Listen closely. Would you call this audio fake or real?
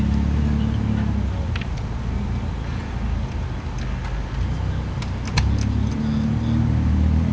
real